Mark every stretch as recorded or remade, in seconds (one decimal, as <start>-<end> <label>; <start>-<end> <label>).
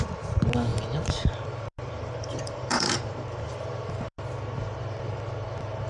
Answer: 0.0-0.7 recorded; 0.7-4.2 remade; 4.2-5.9 recorded